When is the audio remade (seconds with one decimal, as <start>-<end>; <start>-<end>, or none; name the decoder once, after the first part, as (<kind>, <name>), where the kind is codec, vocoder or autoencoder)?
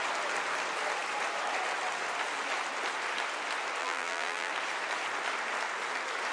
3.8-4.5 (vocoder, BigVGAN v2)